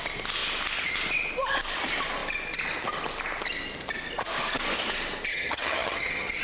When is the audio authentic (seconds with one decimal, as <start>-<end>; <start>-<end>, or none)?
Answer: 0.0-5.3